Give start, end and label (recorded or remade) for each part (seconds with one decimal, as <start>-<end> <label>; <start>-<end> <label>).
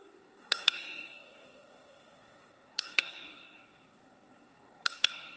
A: 0.0-5.4 remade